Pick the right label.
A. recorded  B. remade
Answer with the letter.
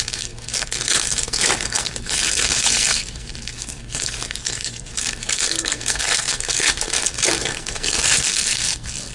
B